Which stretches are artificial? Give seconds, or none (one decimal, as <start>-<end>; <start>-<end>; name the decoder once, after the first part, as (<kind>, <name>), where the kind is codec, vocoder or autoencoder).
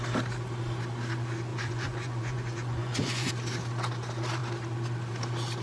1.5-3.3 (vocoder, Vocos)